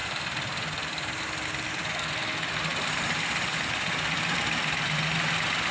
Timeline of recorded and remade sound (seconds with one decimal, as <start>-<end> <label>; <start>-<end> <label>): 0.0-5.7 recorded

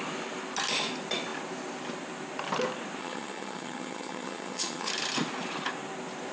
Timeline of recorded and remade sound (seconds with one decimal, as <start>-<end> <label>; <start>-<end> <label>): 0.0-3.0 recorded; 3.0-4.9 remade; 4.9-6.3 recorded